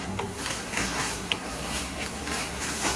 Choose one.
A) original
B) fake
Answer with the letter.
B